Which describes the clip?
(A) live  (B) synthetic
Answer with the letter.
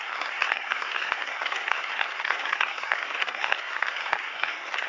B